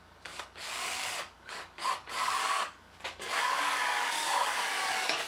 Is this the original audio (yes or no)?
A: no